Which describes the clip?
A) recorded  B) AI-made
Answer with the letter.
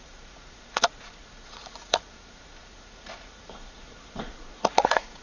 B